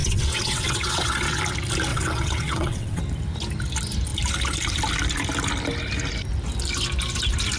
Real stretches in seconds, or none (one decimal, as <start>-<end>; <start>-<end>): 1.4-1.9; 3.0-7.6